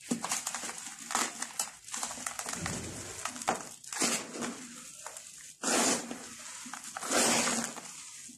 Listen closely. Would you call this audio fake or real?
real